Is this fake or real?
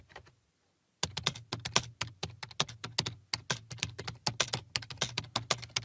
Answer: real